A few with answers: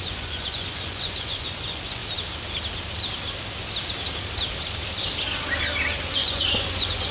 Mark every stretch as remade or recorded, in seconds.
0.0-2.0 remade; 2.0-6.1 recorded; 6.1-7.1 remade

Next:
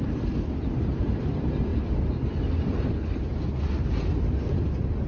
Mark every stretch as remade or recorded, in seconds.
0.0-5.1 recorded